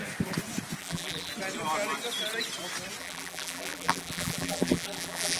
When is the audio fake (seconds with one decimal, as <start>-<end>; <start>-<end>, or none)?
0.8-1.3; 3.0-5.4